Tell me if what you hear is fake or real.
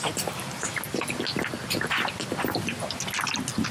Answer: real